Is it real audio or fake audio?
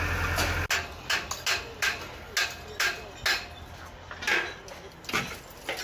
real